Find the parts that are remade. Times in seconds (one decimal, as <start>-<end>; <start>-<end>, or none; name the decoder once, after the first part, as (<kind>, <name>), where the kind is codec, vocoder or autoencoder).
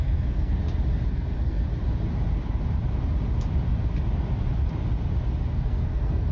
0.0-0.6 (codec, SNAC); 1.1-1.7; 5.5-6.3